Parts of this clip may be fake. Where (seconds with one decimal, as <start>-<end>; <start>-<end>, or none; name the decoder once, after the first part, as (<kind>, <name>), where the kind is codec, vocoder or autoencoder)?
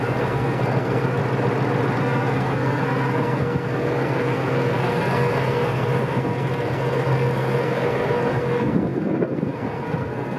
0.0-1.2 (codec, SNAC); 2.0-10.4